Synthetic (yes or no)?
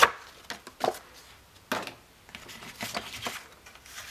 no